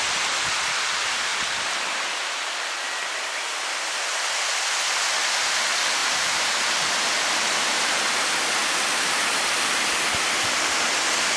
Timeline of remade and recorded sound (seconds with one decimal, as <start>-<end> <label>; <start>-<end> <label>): 0.0-6.0 recorded; 6.0-8.0 remade; 8.0-8.6 recorded; 8.6-9.2 remade; 9.2-11.4 recorded